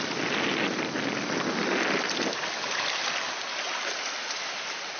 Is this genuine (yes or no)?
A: yes